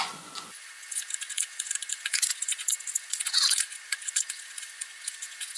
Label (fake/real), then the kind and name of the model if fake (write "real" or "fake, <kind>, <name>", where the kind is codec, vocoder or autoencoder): fake, vocoder, Vocos